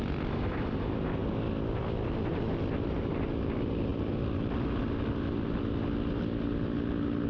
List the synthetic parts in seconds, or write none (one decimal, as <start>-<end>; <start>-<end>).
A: none